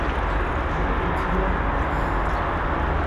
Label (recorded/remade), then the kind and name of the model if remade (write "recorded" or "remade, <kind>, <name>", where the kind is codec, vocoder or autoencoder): recorded